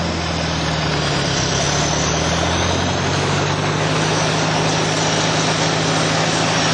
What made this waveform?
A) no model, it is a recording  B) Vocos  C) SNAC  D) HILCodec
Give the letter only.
A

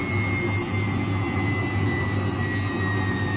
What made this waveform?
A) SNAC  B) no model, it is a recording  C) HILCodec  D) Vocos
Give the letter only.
B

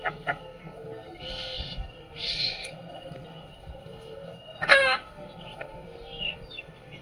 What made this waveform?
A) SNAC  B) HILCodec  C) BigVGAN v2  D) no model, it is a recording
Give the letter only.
A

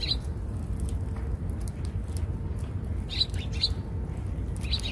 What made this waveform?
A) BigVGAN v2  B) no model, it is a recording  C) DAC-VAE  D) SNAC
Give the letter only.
B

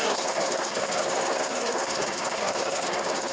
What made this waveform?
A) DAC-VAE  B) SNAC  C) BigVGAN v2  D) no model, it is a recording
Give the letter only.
B